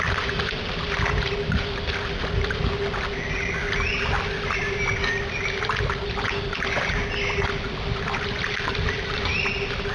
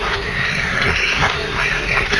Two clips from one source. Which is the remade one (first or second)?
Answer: second